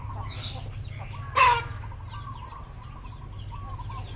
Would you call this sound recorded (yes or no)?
yes